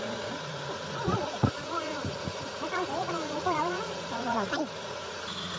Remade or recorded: remade